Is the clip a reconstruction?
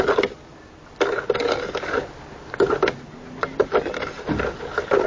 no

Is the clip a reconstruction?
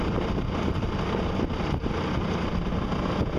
no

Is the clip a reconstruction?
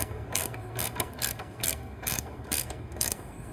yes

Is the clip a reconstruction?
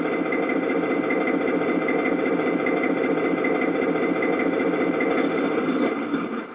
yes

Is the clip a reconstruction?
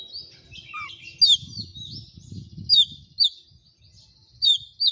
no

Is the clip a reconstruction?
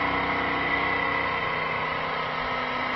no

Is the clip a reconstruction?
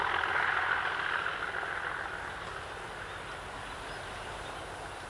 no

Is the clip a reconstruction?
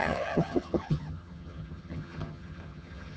yes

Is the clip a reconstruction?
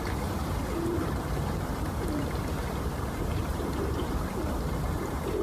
yes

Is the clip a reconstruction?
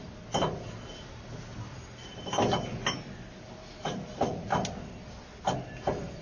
no